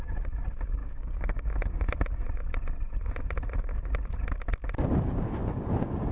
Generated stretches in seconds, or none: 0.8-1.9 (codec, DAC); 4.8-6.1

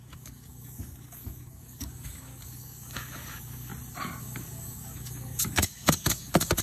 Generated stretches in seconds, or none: 0.0-3.7 (codec, DAC); 4.2-6.6